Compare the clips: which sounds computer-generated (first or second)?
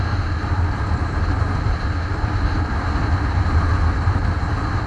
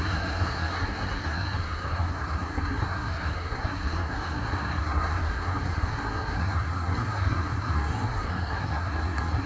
second